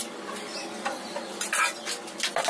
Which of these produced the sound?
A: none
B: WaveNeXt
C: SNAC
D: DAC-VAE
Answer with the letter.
A